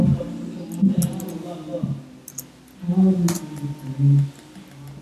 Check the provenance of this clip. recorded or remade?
recorded